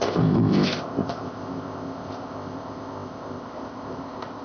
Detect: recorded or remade remade